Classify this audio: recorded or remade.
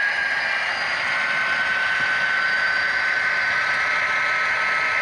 recorded